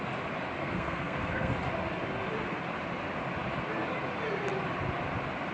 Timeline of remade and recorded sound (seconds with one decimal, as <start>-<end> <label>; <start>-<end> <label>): 0.0-0.6 recorded; 0.6-1.5 remade; 1.5-5.5 recorded